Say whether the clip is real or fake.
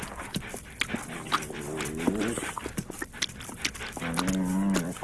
real